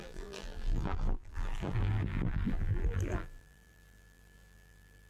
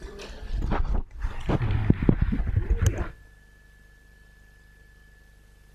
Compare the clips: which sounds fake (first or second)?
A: first